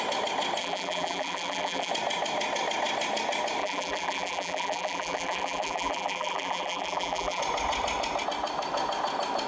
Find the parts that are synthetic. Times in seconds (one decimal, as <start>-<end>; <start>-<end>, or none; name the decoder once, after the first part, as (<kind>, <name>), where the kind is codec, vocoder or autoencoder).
0.6-1.9 (vocoder, BigVGAN v2); 3.6-7.4